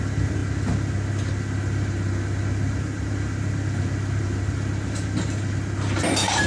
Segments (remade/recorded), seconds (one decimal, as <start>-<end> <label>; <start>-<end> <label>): 0.0-6.5 recorded